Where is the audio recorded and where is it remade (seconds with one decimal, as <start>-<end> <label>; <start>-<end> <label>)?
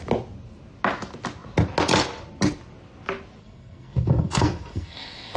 0.0-3.4 recorded; 3.4-5.4 remade